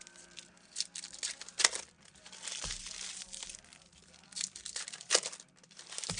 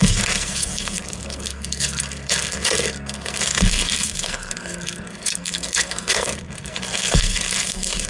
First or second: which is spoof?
second